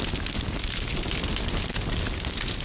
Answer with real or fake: real